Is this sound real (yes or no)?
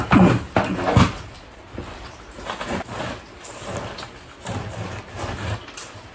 yes